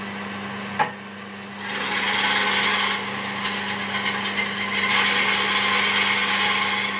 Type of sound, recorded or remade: recorded